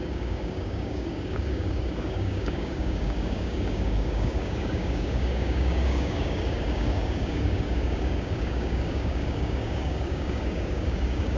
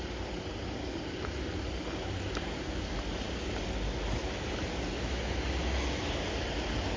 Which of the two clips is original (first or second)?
second